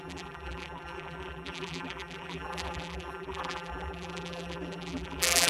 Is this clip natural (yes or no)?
no